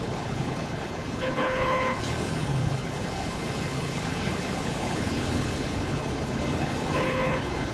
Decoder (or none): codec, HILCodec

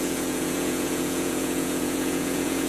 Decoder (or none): vocoder, Vocos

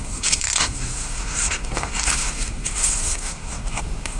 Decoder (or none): codec, SNAC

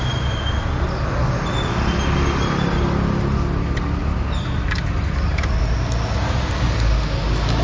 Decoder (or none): none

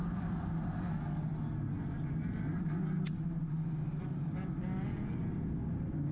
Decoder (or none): none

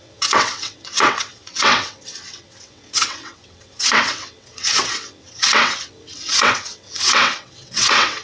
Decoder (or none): vocoder, WaveNeXt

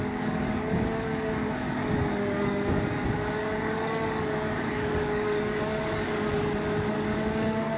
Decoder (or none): codec, DAC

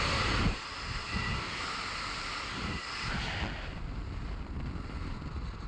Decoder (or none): none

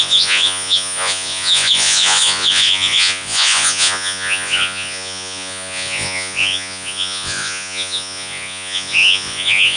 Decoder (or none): vocoder, Vocos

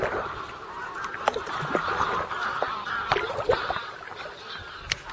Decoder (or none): none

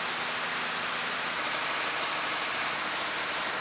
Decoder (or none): none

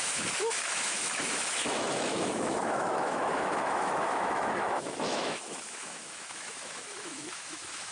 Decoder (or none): autoencoder, DAC-VAE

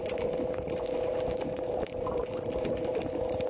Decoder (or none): none